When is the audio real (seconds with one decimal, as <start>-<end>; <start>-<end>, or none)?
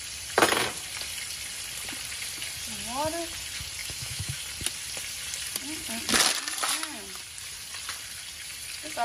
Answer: 0.0-3.8; 4.4-9.0